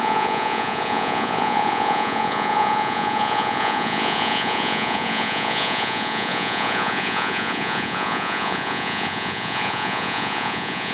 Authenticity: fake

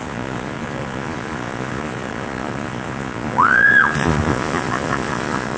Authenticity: fake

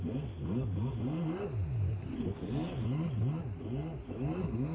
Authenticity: real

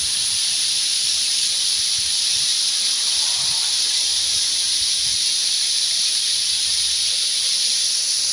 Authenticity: real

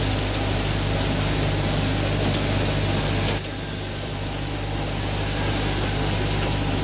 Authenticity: real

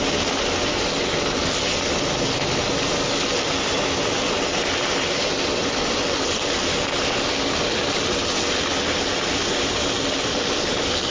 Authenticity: real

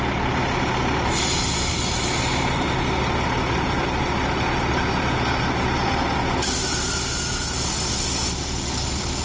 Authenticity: real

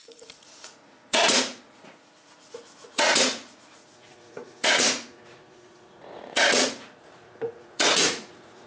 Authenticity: fake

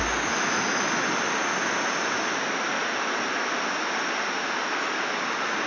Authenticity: real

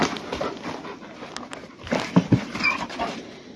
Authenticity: real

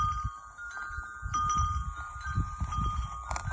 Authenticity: real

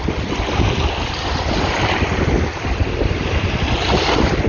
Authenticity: real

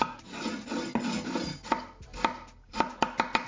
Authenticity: real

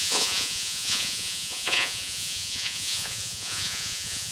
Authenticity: fake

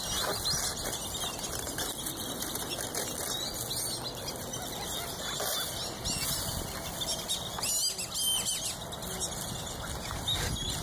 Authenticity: real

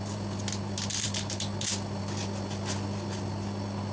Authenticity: real